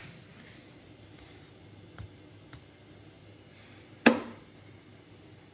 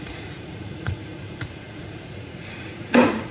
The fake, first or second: second